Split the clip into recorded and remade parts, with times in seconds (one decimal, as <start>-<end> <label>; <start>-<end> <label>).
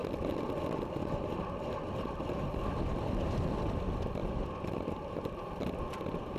0.0-6.4 recorded